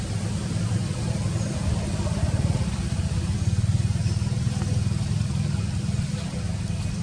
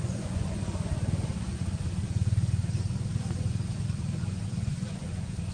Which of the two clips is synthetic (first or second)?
second